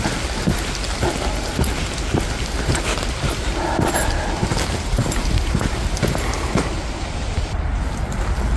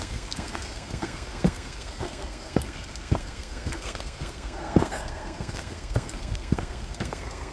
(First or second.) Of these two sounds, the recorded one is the first